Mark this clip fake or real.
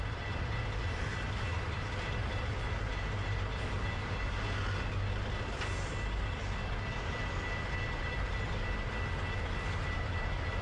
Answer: real